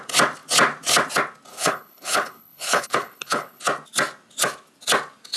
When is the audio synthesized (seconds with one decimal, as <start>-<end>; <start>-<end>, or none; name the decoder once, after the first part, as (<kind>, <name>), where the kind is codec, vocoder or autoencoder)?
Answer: 1.5-3.6 (codec, HILCodec)